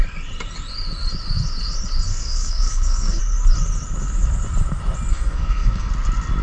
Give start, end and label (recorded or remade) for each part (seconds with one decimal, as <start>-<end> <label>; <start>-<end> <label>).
0.0-2.1 recorded; 2.1-3.2 remade; 3.2-5.1 recorded; 5.1-5.9 remade; 5.9-6.4 recorded

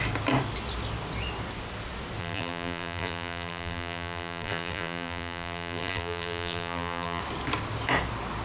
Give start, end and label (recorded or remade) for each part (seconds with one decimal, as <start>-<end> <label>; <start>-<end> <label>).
0.0-2.2 recorded; 2.2-7.2 remade; 7.2-8.4 recorded

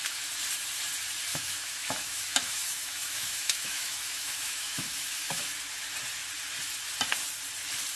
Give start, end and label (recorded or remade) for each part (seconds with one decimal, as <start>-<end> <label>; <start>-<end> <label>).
0.0-1.3 recorded; 1.3-5.6 remade; 5.6-8.0 recorded